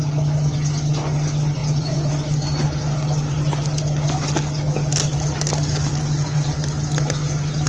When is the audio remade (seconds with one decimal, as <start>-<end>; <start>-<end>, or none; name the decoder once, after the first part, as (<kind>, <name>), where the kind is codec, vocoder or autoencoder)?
1.6-2.1 (vocoder, Vocos)